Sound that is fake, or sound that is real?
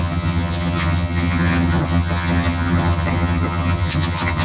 fake